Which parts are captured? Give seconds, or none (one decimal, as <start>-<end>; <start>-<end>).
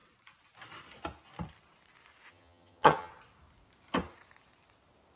0.0-2.3; 3.1-5.2